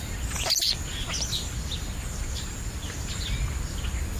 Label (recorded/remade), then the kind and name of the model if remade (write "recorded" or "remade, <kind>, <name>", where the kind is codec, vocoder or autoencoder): recorded